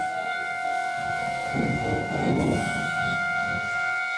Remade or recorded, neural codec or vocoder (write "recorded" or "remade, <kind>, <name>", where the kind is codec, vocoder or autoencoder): remade, codec, SNAC